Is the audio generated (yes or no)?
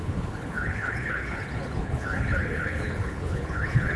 yes